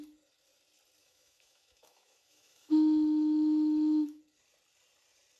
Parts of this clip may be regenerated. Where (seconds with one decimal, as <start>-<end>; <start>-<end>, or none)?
1.0-4.2